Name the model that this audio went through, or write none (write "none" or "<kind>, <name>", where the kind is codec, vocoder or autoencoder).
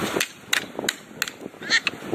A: none